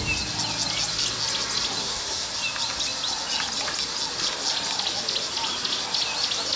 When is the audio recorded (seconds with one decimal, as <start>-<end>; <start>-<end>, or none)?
0.0-1.8; 2.3-6.6